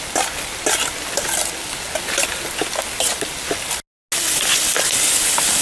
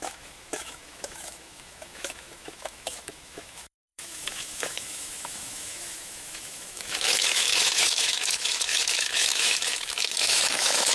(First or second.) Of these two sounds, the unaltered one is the first